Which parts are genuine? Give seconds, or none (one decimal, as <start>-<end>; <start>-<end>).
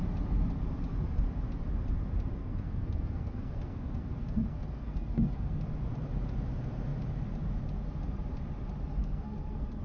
0.0-2.4; 5.6-9.0